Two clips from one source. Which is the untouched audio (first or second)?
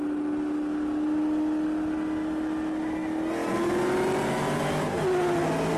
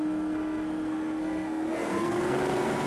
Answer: first